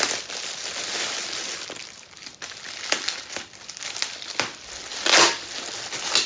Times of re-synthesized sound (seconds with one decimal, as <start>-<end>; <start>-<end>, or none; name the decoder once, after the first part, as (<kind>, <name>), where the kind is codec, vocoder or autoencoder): none